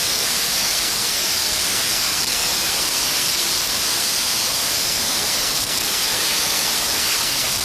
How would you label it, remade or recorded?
remade